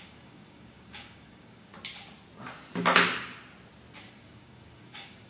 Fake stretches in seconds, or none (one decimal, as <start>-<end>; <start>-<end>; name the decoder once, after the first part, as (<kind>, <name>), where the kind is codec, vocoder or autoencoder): 0.0-1.7 (codec, DAC); 4.0-5.3